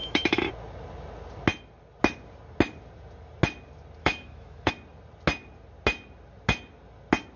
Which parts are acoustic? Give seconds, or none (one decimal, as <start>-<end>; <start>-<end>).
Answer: 0.5-4.0; 4.7-7.4